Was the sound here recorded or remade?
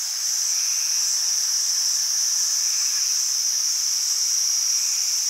remade